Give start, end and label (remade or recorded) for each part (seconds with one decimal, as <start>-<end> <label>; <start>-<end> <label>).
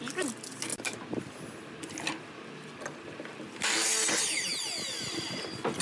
0.0-5.8 recorded